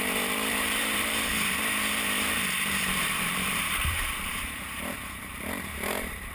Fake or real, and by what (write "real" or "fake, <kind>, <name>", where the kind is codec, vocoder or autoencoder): fake, vocoder, BigVGAN v2